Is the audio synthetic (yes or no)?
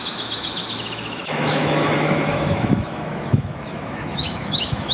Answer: yes